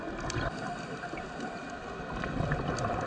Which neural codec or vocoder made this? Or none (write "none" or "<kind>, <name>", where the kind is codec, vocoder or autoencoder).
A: none